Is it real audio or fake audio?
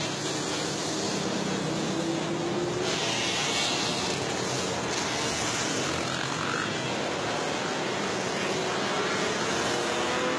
real